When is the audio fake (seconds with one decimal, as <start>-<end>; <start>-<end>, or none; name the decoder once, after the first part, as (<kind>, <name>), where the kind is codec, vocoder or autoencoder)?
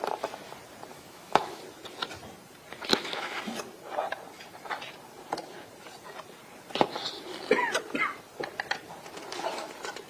0.9-1.6 (autoencoder, DAC-VAE); 2.9-3.4